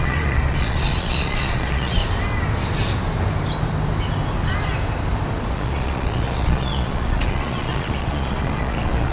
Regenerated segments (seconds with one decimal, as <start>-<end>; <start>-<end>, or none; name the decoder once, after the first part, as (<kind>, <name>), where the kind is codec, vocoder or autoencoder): 0.0-2.0 (vocoder, Vocos); 5.5-9.1